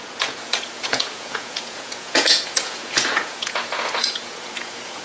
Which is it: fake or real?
fake